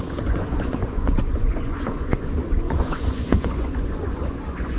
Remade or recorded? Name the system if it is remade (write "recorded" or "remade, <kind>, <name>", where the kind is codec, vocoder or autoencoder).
remade, vocoder, Vocos